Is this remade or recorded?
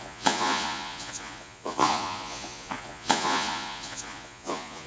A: remade